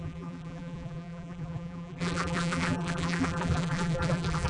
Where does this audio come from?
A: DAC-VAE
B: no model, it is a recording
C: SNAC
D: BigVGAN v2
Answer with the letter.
D